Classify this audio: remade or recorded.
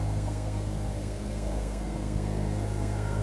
remade